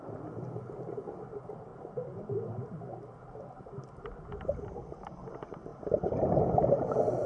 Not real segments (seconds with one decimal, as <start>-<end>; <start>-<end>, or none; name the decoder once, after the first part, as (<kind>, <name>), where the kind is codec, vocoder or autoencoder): none